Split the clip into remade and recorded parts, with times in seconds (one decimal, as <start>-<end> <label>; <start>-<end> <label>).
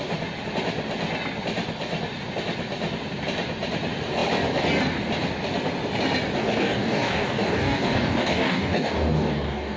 0.0-6.4 recorded; 6.4-9.8 remade